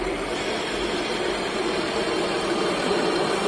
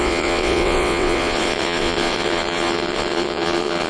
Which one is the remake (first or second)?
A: second